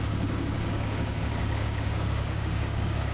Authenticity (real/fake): fake